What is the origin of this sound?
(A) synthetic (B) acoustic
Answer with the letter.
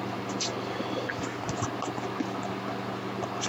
B